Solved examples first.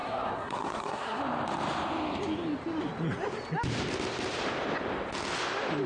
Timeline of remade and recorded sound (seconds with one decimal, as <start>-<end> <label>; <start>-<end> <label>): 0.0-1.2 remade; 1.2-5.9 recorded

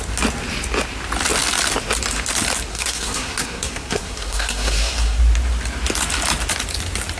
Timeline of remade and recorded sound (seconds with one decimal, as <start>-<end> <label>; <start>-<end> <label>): 0.0-2.7 recorded; 2.7-5.2 remade; 5.2-7.2 recorded

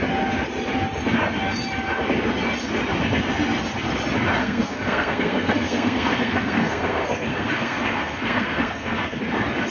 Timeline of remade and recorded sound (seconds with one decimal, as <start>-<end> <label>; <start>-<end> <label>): 0.0-4.4 recorded; 4.4-9.2 remade; 9.2-9.7 recorded